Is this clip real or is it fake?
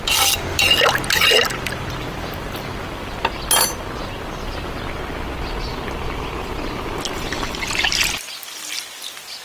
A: real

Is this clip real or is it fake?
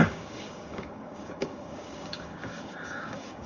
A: fake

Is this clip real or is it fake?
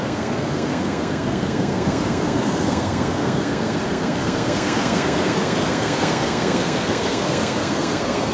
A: fake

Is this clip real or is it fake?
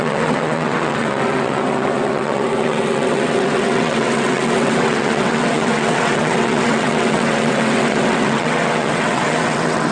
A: fake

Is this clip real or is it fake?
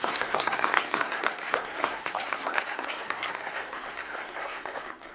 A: fake